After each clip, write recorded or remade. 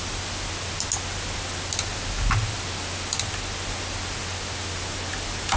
recorded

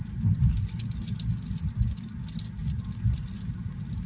recorded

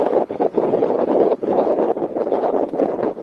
remade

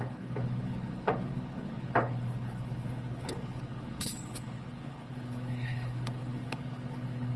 remade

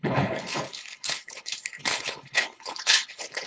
remade